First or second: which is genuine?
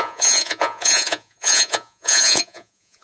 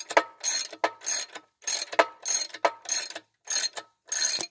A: second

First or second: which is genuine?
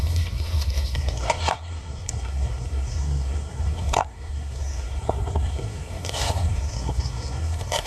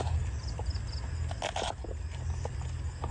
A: second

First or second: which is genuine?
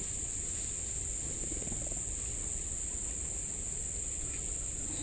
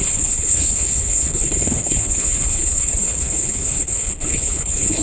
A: first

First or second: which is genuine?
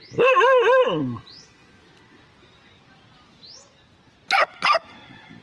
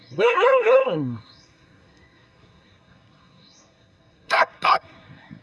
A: first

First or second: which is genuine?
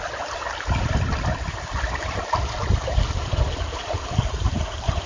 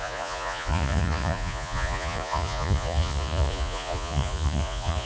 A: first